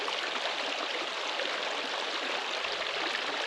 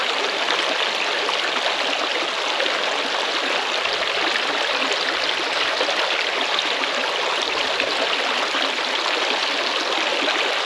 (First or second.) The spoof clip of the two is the first